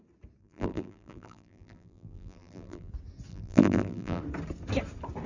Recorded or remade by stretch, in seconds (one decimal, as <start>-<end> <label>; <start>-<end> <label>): 0.0-0.4 recorded; 0.4-2.9 remade; 2.9-3.3 recorded; 3.3-4.2 remade; 4.2-5.3 recorded